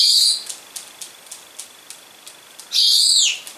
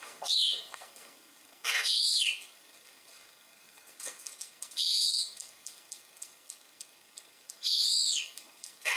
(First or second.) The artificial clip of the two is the second